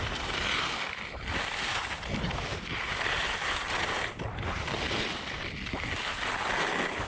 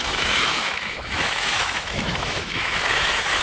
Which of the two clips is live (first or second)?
first